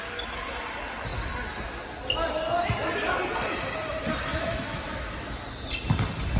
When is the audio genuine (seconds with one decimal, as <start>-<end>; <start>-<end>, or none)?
0.0-4.3; 5.4-6.4